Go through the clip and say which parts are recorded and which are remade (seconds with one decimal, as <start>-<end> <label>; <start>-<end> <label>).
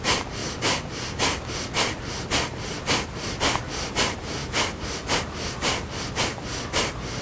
0.0-7.2 recorded